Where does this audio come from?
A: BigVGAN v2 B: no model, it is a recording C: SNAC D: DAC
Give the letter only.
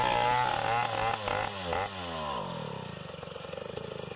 B